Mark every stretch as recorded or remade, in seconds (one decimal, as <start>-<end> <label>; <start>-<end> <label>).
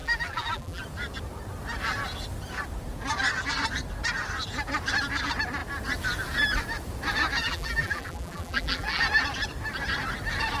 0.0-0.8 remade; 0.8-7.4 recorded; 7.4-9.0 remade; 9.0-10.6 recorded